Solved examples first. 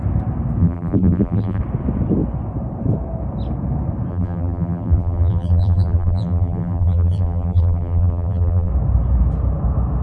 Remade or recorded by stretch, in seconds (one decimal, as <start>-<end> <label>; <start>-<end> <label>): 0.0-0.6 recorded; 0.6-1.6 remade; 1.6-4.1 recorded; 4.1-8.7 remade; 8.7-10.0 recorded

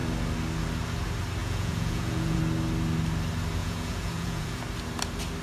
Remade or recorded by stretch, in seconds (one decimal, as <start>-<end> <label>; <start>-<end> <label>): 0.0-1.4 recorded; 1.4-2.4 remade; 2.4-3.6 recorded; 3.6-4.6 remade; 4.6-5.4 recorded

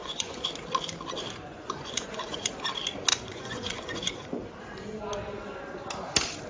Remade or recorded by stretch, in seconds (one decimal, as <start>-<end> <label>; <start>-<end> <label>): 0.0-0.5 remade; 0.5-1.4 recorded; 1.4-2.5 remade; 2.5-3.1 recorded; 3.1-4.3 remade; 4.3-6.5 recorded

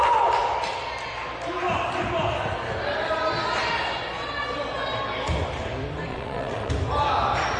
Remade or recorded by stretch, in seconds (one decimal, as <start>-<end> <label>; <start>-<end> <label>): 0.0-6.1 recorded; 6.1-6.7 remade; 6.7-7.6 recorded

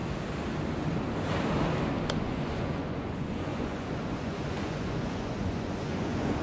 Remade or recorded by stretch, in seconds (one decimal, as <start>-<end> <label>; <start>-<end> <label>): 0.0-2.2 recorded; 2.2-6.4 remade